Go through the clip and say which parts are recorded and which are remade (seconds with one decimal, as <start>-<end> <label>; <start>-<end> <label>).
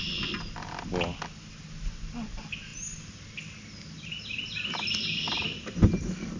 0.0-6.4 recorded